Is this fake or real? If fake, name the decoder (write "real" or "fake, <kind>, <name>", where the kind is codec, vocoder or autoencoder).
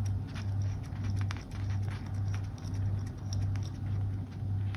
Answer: real